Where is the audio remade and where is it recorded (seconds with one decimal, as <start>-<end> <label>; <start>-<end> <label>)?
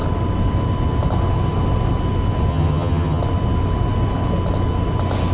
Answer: 0.0-2.5 recorded; 2.5-3.2 remade; 3.2-5.3 recorded